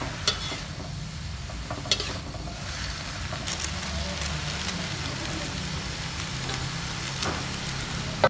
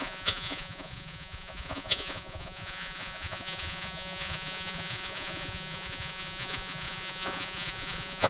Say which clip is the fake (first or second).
second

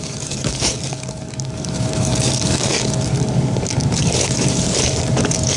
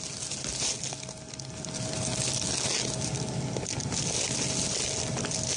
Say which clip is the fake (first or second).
first